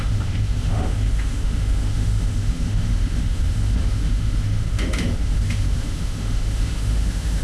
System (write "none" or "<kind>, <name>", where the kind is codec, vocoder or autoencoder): autoencoder, DAC-VAE